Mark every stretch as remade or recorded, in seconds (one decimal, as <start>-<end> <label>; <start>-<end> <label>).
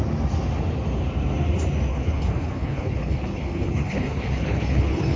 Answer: 0.0-1.9 recorded; 1.9-5.2 remade